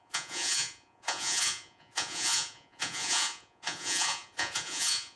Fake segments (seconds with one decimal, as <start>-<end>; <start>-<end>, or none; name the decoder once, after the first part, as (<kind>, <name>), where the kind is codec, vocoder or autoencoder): 0.0-5.2 (vocoder, Vocos)